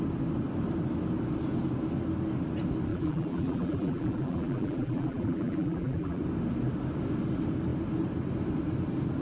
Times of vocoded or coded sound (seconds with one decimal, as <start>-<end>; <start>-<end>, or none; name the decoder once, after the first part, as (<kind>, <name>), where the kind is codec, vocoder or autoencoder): 2.9-6.2 (vocoder, BigVGAN v2)